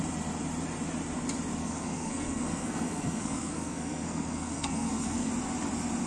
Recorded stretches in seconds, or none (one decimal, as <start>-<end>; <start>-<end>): 0.0-1.6; 5.3-6.1